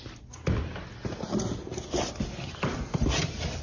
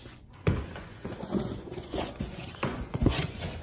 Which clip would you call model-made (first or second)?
second